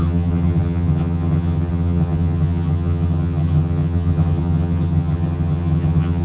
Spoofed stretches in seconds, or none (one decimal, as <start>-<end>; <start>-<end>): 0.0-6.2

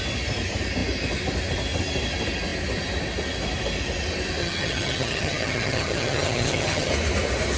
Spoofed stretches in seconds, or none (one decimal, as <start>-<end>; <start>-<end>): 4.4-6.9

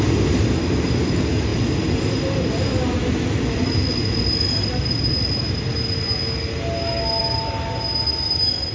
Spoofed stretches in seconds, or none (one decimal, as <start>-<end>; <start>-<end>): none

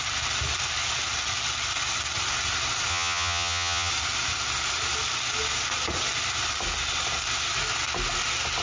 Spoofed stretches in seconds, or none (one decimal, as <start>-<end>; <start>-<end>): 2.9-3.9